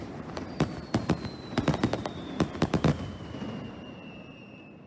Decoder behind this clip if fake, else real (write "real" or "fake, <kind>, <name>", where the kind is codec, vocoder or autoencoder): fake, vocoder, BigVGAN v2